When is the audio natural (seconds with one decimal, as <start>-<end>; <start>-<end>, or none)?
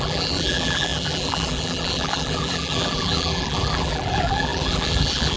none